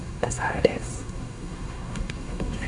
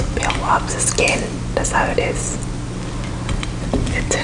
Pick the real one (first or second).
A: second